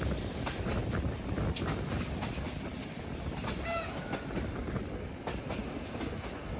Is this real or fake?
real